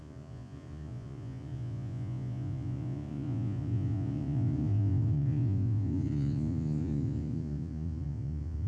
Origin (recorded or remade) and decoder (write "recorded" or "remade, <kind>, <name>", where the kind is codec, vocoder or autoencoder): remade, vocoder, Vocos